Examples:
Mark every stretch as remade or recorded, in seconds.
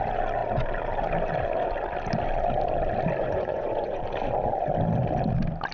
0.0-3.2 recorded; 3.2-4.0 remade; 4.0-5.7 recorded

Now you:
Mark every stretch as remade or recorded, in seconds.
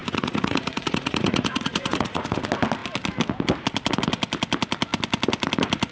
0.0-2.4 remade; 2.4-5.9 recorded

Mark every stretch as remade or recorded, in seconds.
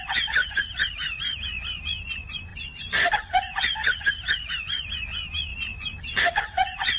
0.0-7.0 remade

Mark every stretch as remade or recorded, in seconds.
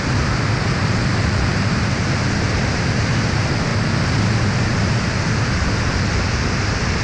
0.0-7.0 recorded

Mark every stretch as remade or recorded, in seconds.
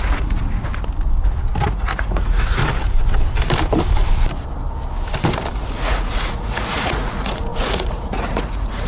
0.0-0.7 remade; 0.7-1.6 recorded; 1.6-2.6 remade; 2.6-5.5 recorded; 5.5-8.9 remade